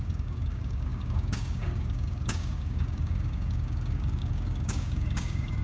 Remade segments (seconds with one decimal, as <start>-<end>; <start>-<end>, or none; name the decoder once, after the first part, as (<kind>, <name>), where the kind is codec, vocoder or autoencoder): 0.0-5.6 (codec, DAC)

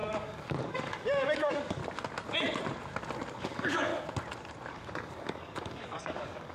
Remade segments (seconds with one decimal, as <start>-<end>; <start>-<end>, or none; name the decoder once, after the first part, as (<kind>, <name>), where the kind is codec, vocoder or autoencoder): 0.0-1.8 (codec, DAC); 3.3-3.9; 4.7-6.5

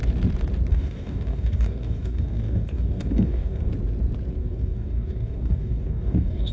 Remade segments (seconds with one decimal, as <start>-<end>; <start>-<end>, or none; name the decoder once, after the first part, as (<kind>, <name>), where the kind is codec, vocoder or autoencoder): 0.7-3.7 (codec, DAC); 4.4-6.5

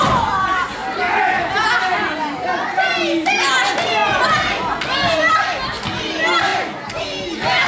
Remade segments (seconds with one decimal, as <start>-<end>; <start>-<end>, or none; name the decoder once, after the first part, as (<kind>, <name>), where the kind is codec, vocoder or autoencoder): none

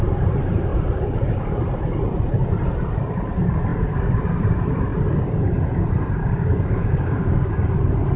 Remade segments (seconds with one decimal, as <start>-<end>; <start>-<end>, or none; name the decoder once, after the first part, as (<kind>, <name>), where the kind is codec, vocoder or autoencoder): 6.2-7.5 (codec, DAC)

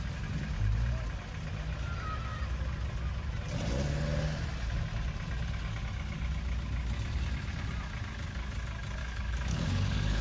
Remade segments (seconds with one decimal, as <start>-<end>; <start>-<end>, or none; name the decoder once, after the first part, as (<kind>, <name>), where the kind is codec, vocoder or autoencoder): 9.0-10.2 (codec, DAC)

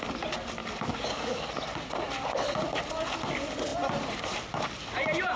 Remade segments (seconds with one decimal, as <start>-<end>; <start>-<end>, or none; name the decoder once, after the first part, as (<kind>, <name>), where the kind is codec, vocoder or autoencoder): 0.6-1.5 (codec, DAC)

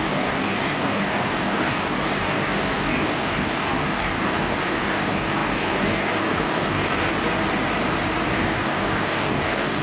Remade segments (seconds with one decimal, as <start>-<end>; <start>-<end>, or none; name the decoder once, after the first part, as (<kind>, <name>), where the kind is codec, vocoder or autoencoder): 0.0-7.1 (codec, DAC); 8.3-9.8